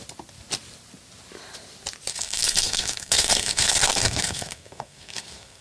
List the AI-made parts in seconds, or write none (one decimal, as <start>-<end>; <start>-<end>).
2.1-5.6